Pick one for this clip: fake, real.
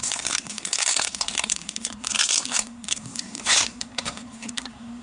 fake